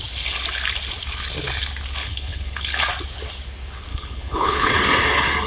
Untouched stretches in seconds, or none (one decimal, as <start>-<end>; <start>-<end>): 0.0-2.0; 2.9-3.9; 4.7-5.5